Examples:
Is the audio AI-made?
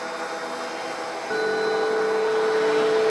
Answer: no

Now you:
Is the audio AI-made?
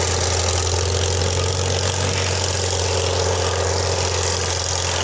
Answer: no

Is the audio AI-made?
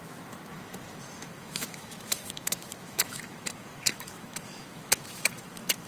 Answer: yes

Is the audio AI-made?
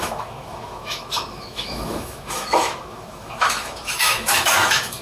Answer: yes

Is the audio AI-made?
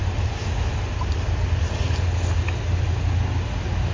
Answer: no